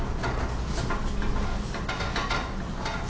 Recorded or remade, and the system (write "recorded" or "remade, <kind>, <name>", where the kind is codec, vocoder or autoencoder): recorded